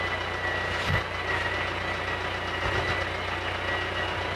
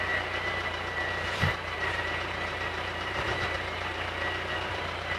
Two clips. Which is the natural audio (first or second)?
first